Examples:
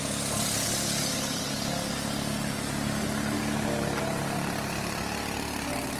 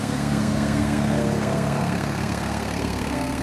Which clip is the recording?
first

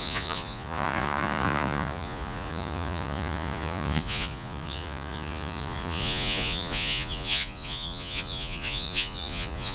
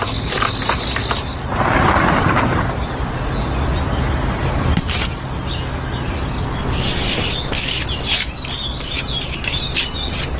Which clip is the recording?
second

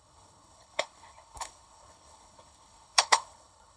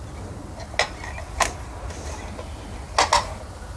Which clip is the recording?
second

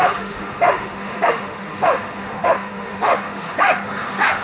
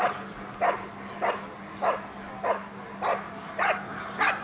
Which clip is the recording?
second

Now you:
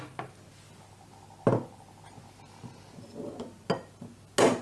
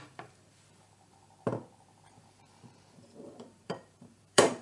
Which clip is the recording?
first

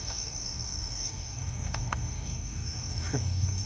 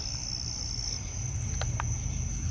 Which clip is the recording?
second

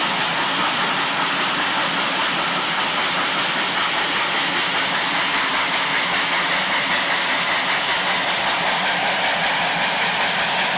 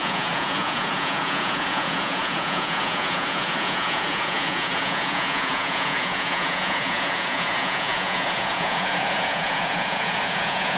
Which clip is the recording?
first